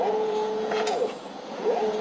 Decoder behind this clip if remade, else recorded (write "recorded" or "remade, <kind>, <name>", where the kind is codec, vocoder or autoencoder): remade, vocoder, Vocos